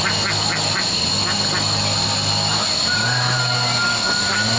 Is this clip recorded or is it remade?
recorded